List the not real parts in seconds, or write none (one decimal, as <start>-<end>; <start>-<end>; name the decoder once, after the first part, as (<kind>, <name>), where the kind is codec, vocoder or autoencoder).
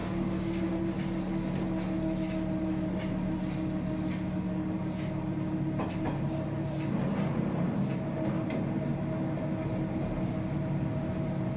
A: 0.0-0.7 (codec, DAC)